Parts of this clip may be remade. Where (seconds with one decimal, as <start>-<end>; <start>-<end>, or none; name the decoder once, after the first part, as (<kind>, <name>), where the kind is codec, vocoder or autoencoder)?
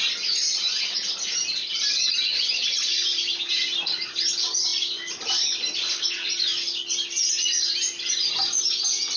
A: 0.0-1.7 (vocoder, BigVGAN v2); 2.9-4.7; 8.1-9.2